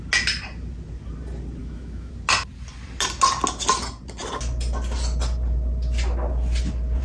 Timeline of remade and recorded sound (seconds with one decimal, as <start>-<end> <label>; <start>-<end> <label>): 0.0-1.6 recorded; 1.6-2.1 remade; 2.1-7.0 recorded